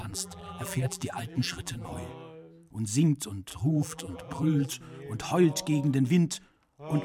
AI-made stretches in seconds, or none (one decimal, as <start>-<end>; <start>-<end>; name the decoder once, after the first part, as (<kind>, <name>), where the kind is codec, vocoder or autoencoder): 0.0-1.9 (vocoder, BigVGAN v2); 3.5-4.7